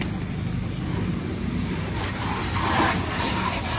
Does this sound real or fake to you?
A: real